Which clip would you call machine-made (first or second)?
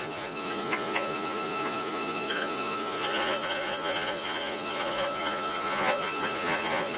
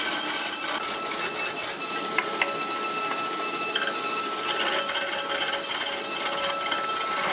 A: first